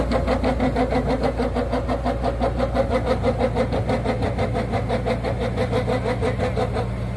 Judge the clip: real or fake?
real